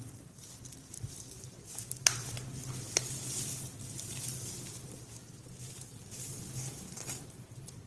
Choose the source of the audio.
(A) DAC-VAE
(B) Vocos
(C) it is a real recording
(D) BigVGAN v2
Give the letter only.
C